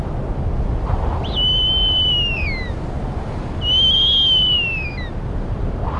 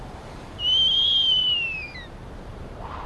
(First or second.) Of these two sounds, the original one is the first